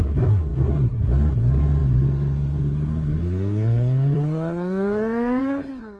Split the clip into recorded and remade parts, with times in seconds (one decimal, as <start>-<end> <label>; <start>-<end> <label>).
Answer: 0.0-6.0 remade

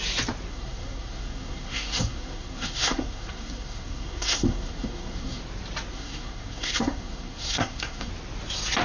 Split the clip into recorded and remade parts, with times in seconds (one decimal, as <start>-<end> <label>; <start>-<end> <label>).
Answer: 0.0-0.5 recorded; 0.5-5.4 remade; 5.4-5.9 recorded; 5.9-8.1 remade; 8.1-8.8 recorded

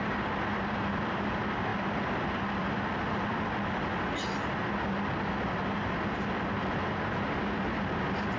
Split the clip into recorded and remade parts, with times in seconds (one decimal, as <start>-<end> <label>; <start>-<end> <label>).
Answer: 0.0-8.4 recorded